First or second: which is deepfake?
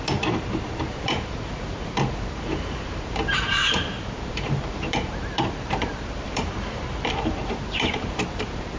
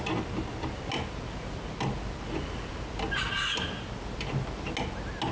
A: first